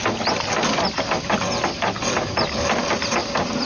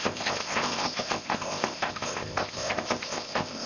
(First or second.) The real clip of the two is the first